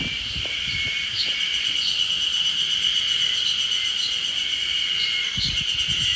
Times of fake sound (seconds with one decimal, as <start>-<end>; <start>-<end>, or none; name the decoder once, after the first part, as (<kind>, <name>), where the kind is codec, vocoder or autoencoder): 1.5-2.1 (vocoder, Vocos); 4.0-4.7